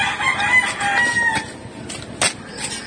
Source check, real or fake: real